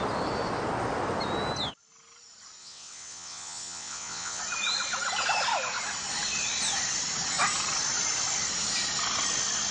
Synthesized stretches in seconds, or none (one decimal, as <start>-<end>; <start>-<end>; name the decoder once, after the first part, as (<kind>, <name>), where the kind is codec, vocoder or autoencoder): 2.6-4.4 (vocoder, WaveNeXt)